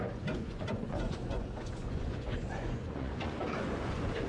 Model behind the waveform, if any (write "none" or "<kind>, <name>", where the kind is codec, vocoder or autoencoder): vocoder, Vocos